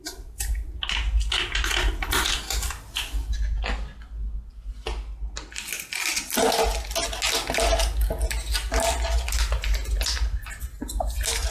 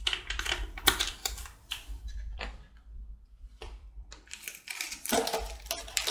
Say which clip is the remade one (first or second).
second